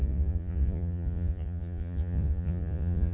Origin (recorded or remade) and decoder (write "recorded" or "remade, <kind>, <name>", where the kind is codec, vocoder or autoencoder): remade, vocoder, Vocos